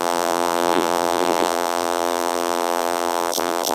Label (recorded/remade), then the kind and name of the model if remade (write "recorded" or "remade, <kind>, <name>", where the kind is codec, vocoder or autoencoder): remade, vocoder, BigVGAN v2